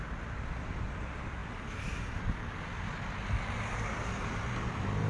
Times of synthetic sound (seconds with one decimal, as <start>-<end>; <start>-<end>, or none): none